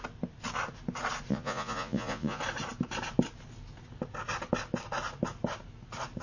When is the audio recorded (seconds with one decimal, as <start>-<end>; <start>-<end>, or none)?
0.0-1.3; 2.4-6.2